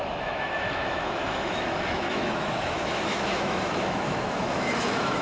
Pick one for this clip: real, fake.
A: fake